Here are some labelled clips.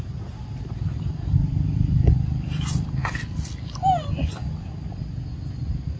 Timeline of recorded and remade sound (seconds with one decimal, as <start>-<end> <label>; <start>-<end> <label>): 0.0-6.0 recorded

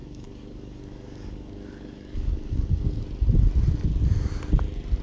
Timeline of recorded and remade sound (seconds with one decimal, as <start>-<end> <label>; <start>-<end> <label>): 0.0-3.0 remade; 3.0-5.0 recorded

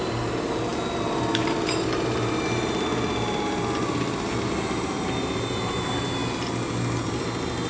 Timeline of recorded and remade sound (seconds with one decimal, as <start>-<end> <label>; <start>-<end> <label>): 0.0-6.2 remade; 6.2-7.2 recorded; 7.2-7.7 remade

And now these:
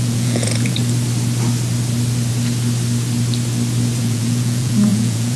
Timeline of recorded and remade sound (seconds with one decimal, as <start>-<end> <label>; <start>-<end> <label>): 0.0-0.8 remade; 0.8-4.0 recorded; 4.0-5.4 remade

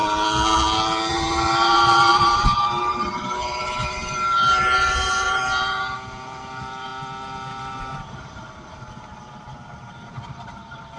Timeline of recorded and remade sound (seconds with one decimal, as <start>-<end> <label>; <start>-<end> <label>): 0.0-1.1 recorded; 1.1-6.9 remade; 6.9-8.1 recorded; 8.1-11.0 remade